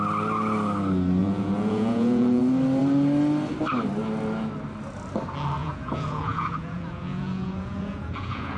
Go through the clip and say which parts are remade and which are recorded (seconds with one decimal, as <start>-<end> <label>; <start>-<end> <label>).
0.0-1.2 recorded; 1.2-2.4 remade; 2.4-5.6 recorded; 5.6-8.6 remade